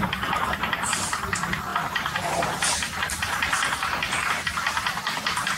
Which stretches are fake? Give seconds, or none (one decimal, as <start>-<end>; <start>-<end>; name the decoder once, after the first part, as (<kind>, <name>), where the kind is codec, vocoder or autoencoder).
none